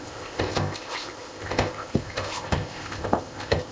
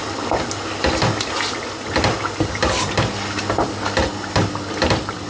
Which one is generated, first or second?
first